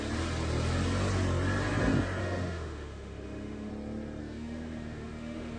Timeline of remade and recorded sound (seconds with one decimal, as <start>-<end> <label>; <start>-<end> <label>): 0.0-2.2 recorded; 2.2-3.7 remade; 3.7-4.2 recorded; 4.2-5.6 remade